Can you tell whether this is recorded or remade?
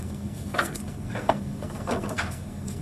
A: remade